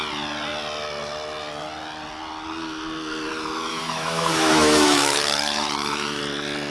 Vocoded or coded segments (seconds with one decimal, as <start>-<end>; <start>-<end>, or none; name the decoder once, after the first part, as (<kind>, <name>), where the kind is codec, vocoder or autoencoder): 3.7-6.2 (autoencoder, DAC-VAE)